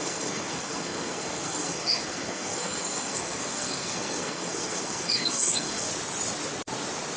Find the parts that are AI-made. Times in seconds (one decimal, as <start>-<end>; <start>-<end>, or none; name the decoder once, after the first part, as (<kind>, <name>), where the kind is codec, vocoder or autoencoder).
0.0-5.9 (codec, SNAC)